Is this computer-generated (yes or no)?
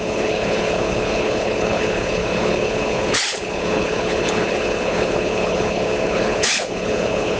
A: yes